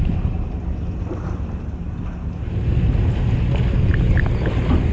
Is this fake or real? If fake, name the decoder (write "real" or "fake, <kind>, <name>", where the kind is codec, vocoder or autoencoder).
real